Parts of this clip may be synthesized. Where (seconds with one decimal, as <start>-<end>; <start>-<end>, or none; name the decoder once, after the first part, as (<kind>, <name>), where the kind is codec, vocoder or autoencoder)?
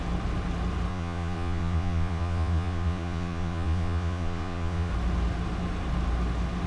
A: 0.9-4.9 (vocoder, Vocos)